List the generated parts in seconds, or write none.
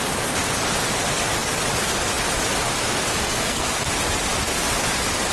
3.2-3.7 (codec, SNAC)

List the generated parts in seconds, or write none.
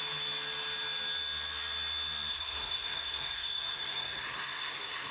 2.3-5.1 (codec, SNAC)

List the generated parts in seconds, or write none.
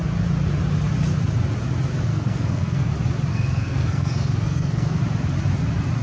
2.1-2.9 (codec, SNAC); 3.3-5.0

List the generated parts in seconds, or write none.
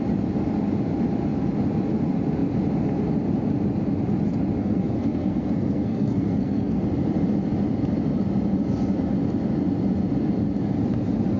4.6-6.8 (codec, SNAC)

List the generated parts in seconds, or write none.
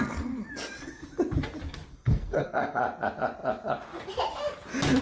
1.9-2.8 (codec, SNAC)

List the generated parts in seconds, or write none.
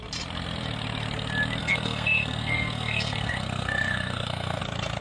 1.6-4.6 (codec, SNAC)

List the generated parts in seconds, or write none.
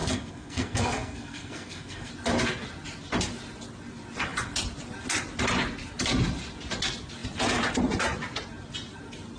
0.0-2.1 (codec, SNAC)